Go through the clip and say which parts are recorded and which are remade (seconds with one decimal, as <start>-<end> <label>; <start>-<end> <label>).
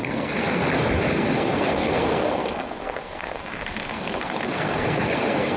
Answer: 0.0-0.6 remade; 0.6-1.1 recorded; 1.1-5.6 remade